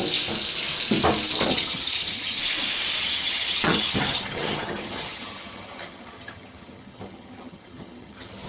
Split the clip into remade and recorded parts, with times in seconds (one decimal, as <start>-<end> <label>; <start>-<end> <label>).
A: 0.0-1.5 recorded; 1.5-2.4 remade; 2.4-3.0 recorded; 3.0-8.5 remade